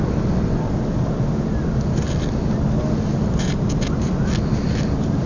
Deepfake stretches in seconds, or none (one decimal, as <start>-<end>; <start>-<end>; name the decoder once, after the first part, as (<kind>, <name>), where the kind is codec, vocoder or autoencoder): none